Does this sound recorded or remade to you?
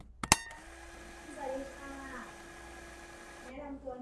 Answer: recorded